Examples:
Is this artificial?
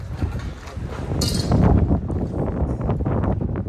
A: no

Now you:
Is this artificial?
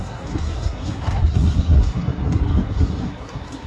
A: yes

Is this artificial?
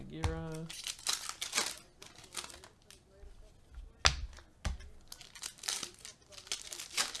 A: no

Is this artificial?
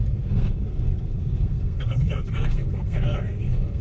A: yes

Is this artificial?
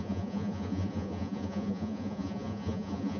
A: yes